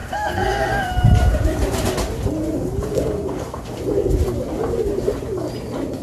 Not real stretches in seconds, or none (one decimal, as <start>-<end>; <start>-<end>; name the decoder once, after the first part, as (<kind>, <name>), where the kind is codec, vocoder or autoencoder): 0.0-0.9 (codec, SNAC); 2.9-3.7